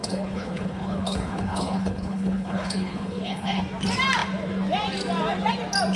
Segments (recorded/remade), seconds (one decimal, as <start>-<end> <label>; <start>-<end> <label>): 0.0-3.6 remade; 3.6-6.0 recorded

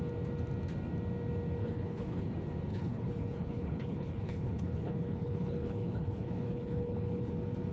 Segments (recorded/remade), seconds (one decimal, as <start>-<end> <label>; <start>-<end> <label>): 0.0-1.6 recorded; 1.6-2.3 remade; 2.3-2.7 recorded; 2.7-7.3 remade; 7.3-7.7 recorded

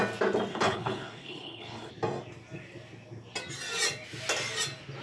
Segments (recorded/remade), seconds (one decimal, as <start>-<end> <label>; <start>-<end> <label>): 0.0-0.5 recorded; 0.5-1.9 remade; 1.9-5.0 recorded

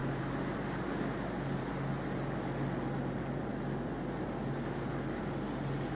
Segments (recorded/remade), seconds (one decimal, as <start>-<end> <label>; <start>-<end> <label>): 0.0-5.9 recorded